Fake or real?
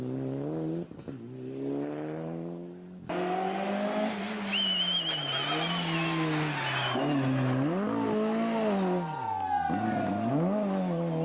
real